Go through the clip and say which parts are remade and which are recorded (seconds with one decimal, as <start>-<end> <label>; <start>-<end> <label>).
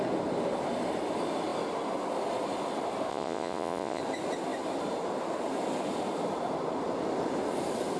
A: 0.0-3.1 recorded; 3.1-4.0 remade; 4.0-8.0 recorded